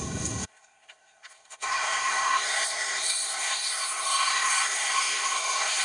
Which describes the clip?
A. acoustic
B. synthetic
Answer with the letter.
B